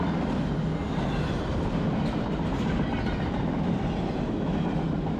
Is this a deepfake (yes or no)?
no